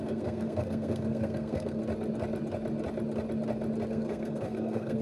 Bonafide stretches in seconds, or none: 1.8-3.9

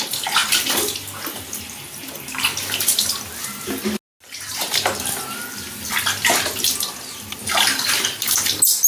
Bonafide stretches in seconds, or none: 0.0-8.9

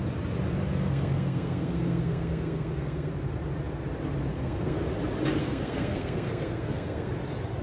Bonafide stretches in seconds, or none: 0.0-0.7; 3.1-4.3; 4.8-5.4; 7.1-7.6